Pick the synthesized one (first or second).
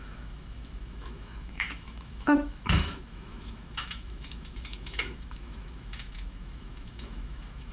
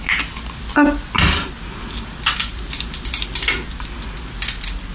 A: first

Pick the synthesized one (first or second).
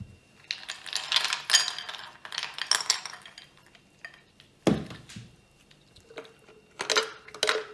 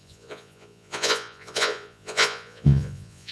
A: second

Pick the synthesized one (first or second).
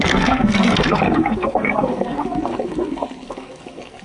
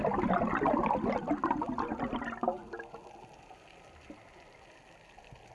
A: first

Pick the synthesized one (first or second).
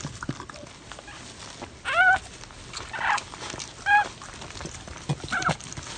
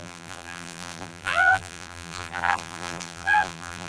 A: second